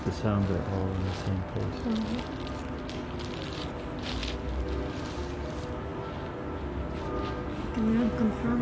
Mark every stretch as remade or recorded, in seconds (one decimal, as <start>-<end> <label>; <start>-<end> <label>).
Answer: 0.0-8.6 recorded

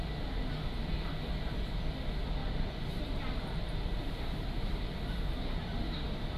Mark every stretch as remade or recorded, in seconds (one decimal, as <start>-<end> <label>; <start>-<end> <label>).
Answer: 0.0-2.4 recorded; 2.4-6.4 remade

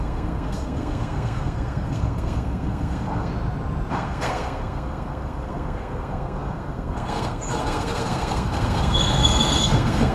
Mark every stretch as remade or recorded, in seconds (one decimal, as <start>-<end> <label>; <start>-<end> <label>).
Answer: 0.0-3.3 remade; 3.3-3.9 recorded; 3.9-10.1 remade

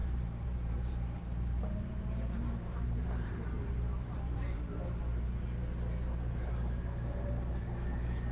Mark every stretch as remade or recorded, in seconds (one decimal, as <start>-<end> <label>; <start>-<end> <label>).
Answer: 0.0-5.0 remade; 5.0-8.3 recorded

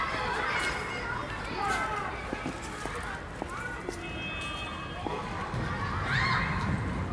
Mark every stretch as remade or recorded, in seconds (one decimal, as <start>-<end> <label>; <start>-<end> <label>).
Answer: 0.0-5.0 recorded; 5.0-5.7 remade; 5.7-7.1 recorded

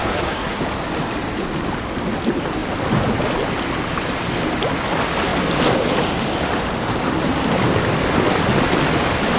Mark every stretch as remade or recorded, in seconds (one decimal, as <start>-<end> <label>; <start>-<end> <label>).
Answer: 0.0-0.6 remade; 0.6-9.4 recorded

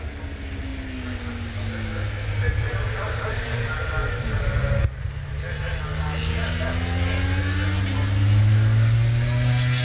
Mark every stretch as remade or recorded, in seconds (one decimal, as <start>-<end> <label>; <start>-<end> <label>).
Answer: 0.0-9.8 recorded